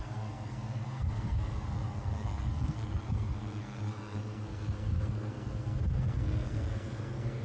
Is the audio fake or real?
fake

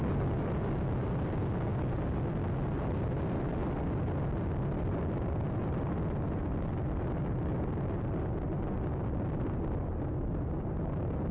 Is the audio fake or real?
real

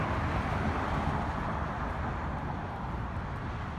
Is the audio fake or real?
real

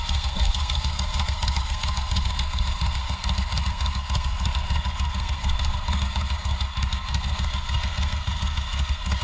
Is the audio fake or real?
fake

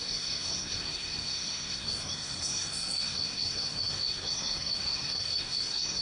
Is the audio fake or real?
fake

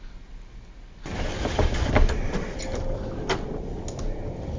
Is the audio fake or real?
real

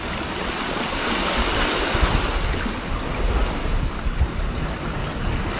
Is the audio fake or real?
real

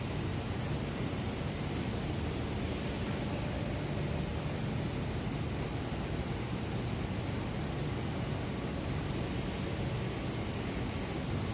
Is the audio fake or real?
real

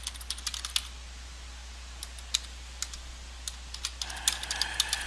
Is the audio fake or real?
real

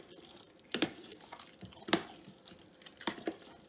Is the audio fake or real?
real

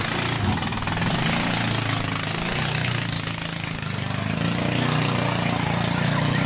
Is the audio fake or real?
real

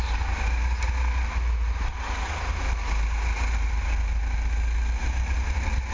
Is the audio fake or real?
real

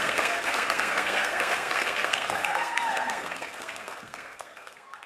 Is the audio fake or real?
fake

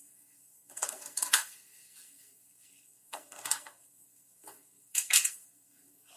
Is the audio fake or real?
fake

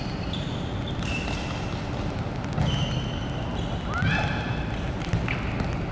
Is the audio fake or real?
real